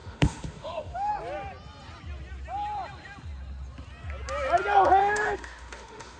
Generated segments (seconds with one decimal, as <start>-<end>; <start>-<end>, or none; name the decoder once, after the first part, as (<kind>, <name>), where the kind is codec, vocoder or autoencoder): 0.0-1.1 (autoencoder, DAC-VAE); 5.0-6.2

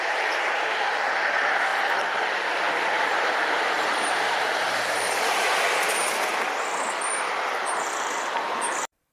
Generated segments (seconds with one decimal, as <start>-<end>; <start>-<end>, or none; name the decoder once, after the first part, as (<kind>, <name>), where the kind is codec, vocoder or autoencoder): 0.0-1.7 (vocoder, BigVGAN v2); 3.0-5.5; 7.5-9.1

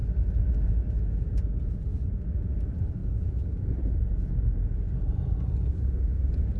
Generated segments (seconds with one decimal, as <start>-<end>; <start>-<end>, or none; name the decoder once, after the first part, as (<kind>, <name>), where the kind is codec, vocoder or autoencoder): 3.0-4.5 (vocoder, Vocos)

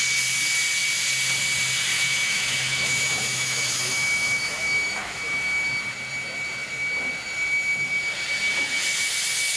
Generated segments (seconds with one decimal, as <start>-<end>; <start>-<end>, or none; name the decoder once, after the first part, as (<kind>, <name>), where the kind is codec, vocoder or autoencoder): 1.9-5.7 (autoencoder, DAC-VAE)

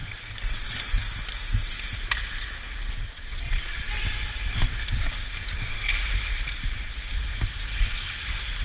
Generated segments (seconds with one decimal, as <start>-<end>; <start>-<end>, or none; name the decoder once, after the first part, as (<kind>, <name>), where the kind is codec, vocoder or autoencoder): 3.1-3.9 (vocoder, Vocos)

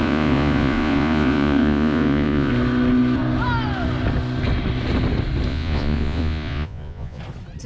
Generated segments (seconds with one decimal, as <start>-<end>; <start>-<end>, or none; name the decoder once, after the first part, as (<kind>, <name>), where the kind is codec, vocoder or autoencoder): 0.0-2.5 (vocoder, Vocos); 5.5-7.2

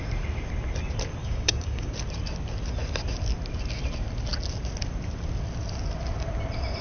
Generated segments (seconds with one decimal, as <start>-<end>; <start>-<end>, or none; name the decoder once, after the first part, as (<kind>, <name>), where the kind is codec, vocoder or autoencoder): 1.2-1.9 (codec, DAC)

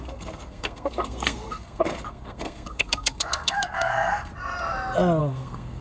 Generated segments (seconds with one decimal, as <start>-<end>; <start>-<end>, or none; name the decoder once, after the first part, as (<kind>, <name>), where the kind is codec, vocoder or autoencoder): 0.0-4.3 (codec, SNAC); 5.2-5.8